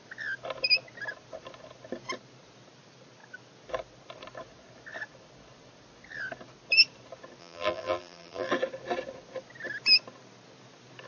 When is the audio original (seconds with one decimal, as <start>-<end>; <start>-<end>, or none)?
0.0-7.4; 8.5-11.1